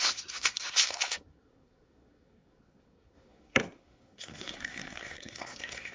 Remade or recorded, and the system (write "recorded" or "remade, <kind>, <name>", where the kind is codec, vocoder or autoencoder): remade, codec, SNAC